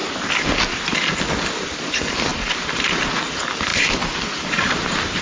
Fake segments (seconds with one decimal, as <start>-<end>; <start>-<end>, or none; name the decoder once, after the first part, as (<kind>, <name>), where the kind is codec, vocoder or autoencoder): 2.3-3.1 (vocoder, BigVGAN v2); 3.7-5.2